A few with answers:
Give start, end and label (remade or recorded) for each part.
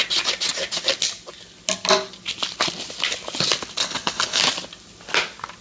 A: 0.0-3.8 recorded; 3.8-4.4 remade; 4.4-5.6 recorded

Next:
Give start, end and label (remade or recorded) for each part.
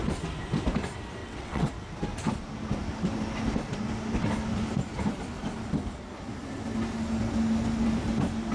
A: 0.0-1.2 recorded; 1.2-1.7 remade; 1.7-8.5 recorded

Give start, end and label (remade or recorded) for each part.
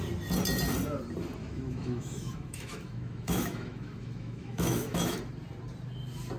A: 0.0-1.4 recorded; 1.4-5.2 remade; 5.2-6.4 recorded